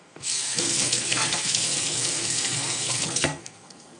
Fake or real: fake